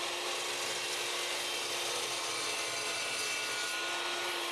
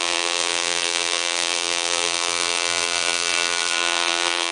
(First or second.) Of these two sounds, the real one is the first